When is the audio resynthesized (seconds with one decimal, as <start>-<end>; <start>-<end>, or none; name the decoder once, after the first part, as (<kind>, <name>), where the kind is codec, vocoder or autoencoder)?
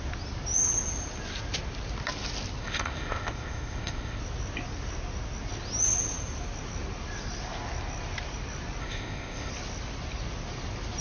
2.6-4.2 (codec, ZipCodec); 8.8-9.5